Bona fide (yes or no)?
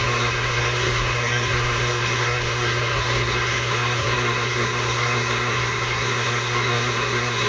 no